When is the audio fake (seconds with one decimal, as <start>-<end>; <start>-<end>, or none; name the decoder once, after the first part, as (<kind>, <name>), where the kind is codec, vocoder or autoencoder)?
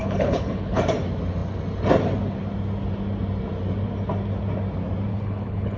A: 0.0-0.8 (codec, HILCodec); 5.1-5.8